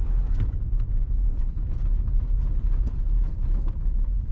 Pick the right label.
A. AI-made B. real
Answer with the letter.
A